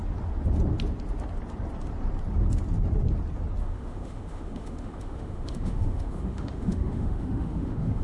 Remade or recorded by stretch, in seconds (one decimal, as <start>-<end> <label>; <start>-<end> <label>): 0.0-3.6 recorded; 3.6-8.0 remade